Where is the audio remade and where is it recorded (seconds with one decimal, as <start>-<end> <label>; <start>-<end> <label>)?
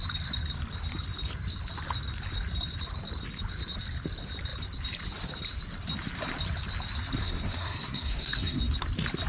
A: 0.0-7.2 recorded; 7.2-8.6 remade; 8.6-9.3 recorded